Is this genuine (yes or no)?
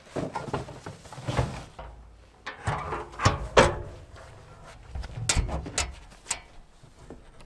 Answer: yes